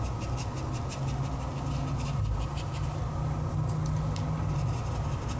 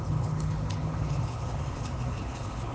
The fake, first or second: second